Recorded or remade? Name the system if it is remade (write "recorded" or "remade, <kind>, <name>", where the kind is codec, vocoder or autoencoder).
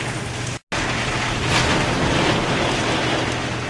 recorded